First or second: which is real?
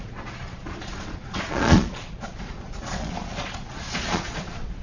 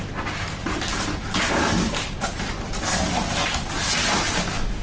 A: second